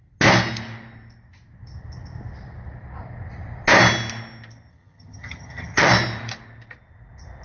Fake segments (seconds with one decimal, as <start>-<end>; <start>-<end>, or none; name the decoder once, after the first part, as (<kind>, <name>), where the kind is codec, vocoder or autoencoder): 4.7-5.9 (vocoder, HiFi-GAN)